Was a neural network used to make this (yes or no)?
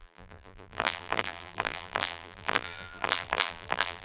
yes